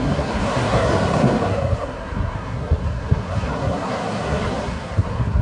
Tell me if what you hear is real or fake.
fake